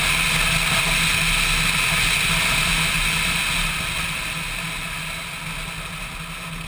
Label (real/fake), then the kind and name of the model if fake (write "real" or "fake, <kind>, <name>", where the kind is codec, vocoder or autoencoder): real